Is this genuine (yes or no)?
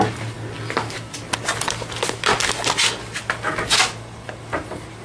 yes